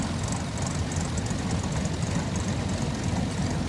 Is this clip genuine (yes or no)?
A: yes